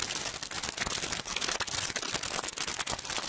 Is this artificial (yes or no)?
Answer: no